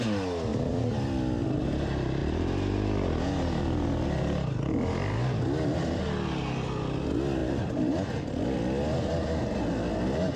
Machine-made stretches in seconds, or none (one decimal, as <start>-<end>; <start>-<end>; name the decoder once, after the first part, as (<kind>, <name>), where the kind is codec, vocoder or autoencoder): 0.5-1.6 (vocoder, BigVGAN v2); 7.4-8.3